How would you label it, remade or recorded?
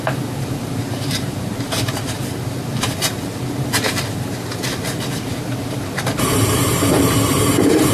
remade